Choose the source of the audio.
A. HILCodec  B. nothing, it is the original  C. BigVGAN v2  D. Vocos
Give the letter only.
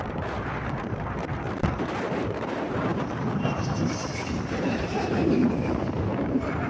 C